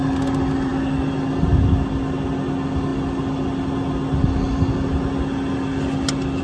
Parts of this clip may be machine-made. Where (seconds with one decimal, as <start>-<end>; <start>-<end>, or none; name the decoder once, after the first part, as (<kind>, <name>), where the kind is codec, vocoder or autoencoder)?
none